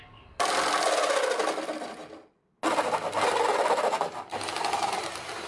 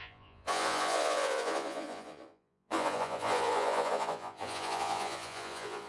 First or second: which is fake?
second